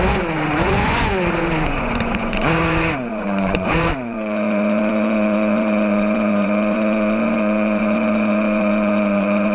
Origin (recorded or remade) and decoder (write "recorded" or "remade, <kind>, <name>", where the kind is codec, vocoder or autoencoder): remade, vocoder, Vocos